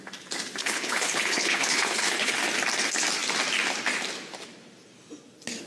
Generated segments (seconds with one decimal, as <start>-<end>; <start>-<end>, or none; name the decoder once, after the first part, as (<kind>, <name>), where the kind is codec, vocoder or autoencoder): 0.6-2.4 (codec, HILCodec)